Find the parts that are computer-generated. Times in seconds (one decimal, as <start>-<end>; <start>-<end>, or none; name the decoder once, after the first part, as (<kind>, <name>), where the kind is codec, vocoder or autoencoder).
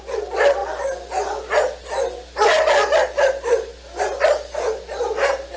none